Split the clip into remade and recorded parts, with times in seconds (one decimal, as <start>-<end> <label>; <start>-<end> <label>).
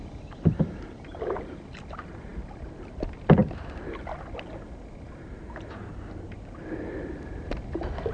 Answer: 0.0-8.1 recorded